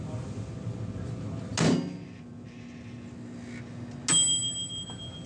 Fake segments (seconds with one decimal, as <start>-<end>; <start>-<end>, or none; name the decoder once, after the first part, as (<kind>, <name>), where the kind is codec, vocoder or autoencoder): none